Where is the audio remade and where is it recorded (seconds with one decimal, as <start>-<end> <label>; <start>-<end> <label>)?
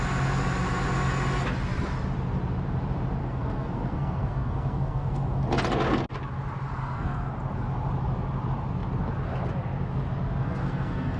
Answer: 0.0-3.2 recorded; 3.2-5.4 remade; 5.4-6.8 recorded; 6.8-7.3 remade; 7.3-10.4 recorded; 10.4-11.2 remade